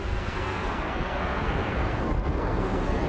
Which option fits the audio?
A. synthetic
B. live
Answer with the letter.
A